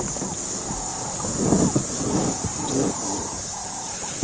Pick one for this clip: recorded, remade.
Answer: recorded